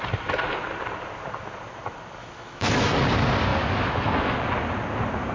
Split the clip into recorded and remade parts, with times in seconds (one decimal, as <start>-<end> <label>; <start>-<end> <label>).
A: 0.0-2.2 recorded; 2.2-2.9 remade; 2.9-5.3 recorded